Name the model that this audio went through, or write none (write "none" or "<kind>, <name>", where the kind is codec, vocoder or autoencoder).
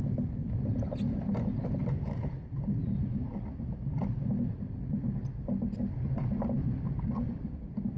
none